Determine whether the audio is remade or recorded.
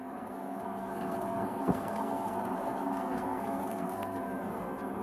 remade